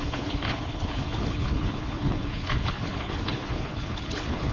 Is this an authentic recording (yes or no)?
no